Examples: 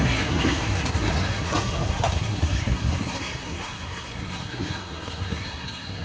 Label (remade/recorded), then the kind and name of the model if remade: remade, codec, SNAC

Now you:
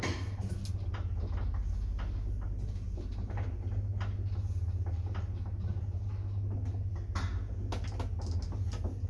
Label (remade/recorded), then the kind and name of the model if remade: recorded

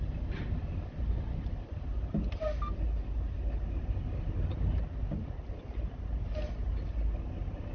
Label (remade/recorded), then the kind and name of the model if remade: recorded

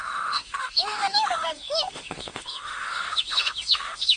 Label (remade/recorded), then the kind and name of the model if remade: remade, autoencoder, DAC-VAE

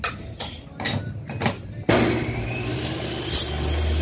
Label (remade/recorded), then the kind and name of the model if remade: recorded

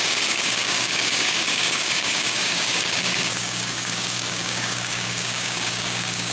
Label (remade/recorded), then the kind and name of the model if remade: remade, codec, DAC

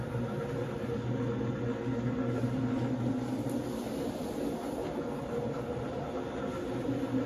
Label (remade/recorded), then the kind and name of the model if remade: recorded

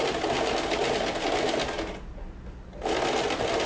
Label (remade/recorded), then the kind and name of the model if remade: recorded